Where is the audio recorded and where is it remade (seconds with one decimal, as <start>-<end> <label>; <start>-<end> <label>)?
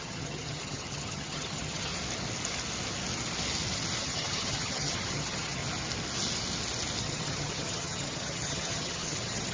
0.0-1.9 remade; 1.9-4.0 recorded; 4.0-5.6 remade; 5.6-7.0 recorded; 7.0-9.5 remade